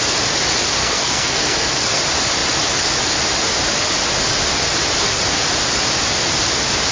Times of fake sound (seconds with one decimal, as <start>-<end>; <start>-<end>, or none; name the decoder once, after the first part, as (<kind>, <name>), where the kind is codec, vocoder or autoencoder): 0.8-2.0 (codec, SNAC)